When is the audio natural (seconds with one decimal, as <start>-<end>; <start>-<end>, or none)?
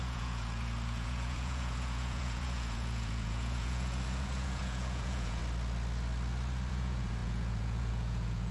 5.4-6.7